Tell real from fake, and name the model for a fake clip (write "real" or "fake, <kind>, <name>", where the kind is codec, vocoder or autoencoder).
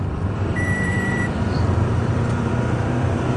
fake, vocoder, BigVGAN v2